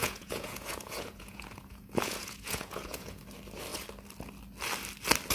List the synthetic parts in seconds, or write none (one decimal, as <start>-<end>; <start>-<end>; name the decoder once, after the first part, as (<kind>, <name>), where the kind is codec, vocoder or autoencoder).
0.0-3.2 (vocoder, Vocos)

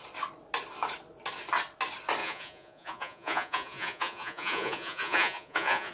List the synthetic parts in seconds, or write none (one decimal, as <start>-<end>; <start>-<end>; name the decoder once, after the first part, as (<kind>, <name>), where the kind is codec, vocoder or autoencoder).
2.2-5.9 (vocoder, Vocos)

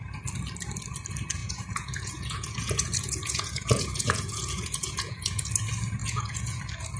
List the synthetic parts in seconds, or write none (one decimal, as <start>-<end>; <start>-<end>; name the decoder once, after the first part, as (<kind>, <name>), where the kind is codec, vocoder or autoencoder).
1.4-5.5 (vocoder, Vocos); 6.0-6.6

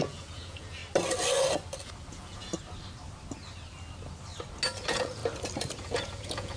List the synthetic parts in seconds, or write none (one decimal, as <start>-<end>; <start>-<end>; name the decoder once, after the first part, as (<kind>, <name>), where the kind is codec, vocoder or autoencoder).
0.0-0.8 (vocoder, Vocos); 2.1-2.5; 4.8-5.2; 5.8-6.6

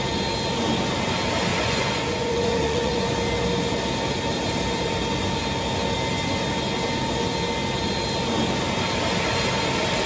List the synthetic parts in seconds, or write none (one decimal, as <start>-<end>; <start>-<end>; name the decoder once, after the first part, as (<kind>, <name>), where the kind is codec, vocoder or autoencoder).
1.5-3.1 (vocoder, Vocos)

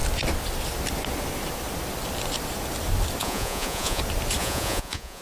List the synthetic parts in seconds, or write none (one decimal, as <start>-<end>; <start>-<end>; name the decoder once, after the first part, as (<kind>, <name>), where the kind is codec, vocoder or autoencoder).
3.2-4.0 (vocoder, Vocos); 4.4-5.2

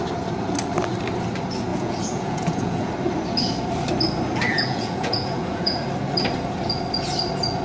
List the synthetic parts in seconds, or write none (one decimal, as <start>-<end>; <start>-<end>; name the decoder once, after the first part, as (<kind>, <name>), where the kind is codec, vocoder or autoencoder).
1.7-2.9 (vocoder, Vocos); 4.5-5.8